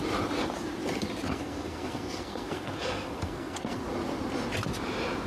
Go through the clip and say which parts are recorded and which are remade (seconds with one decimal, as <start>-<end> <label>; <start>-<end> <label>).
0.0-1.3 recorded; 1.3-3.8 remade; 3.8-5.3 recorded